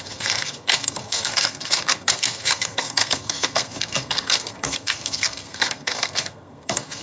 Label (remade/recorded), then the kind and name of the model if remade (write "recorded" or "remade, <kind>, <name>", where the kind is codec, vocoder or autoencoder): remade, codec, SNAC